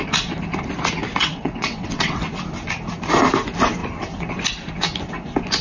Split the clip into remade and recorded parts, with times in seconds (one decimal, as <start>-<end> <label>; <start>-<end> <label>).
0.0-1.2 recorded; 1.2-2.2 remade; 2.2-5.6 recorded